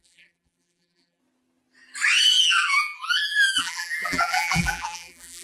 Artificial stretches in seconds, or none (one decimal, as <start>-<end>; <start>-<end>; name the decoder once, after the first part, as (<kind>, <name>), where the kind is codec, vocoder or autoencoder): 0.0-1.2 (vocoder, BigVGAN v2); 2.4-5.4